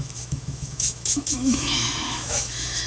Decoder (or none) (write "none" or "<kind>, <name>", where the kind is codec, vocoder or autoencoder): autoencoder, DAC-VAE